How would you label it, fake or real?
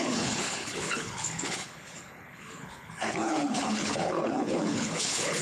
fake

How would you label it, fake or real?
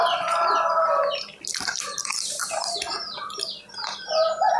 real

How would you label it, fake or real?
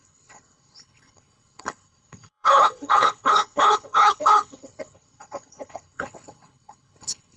fake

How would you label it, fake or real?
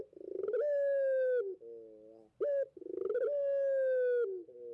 real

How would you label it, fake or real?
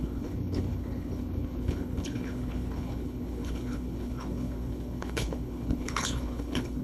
fake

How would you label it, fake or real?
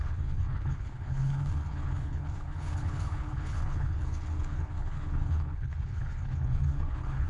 fake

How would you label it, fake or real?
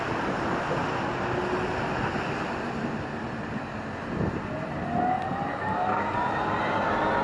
real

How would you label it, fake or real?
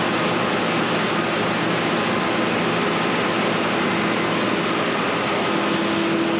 real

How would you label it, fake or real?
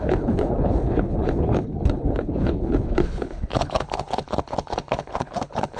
fake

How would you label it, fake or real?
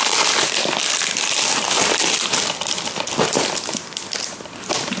real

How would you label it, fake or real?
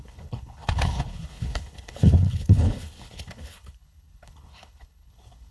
fake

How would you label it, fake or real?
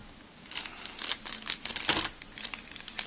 real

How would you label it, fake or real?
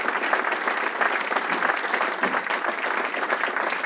real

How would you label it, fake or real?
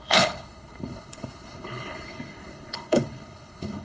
fake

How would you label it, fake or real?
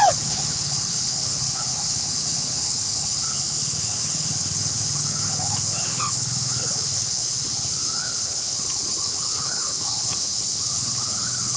fake